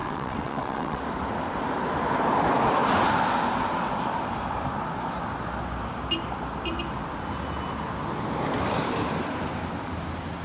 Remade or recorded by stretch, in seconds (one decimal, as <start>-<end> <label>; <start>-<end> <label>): 0.0-1.0 remade; 1.0-10.4 recorded